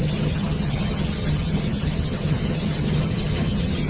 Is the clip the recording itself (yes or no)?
no